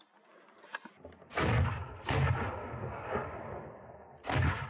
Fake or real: real